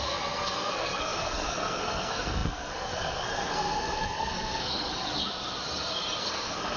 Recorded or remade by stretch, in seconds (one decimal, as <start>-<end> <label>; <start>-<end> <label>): 0.0-4.9 remade; 4.9-6.2 recorded; 6.2-6.8 remade